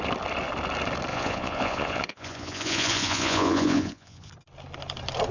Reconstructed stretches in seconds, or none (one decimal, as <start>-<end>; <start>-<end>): 1.1-4.3